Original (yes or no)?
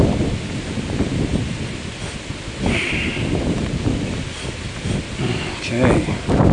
yes